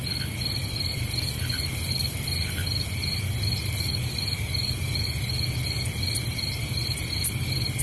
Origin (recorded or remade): recorded